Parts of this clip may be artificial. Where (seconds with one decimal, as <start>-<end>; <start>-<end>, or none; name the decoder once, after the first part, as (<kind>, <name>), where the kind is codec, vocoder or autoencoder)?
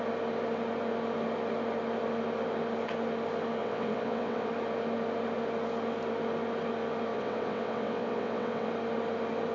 3.6-4.5 (vocoder, WaveNeXt); 7.1-8.7